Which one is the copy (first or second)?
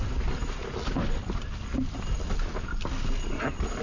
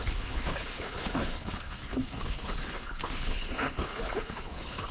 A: second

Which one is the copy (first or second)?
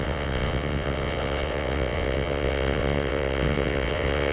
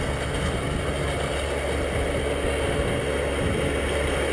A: first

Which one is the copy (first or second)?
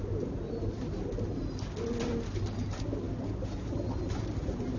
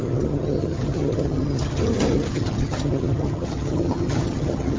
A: second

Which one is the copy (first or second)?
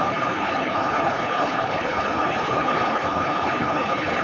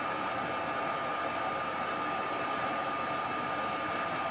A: first